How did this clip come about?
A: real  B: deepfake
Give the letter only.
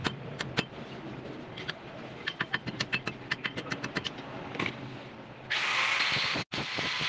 A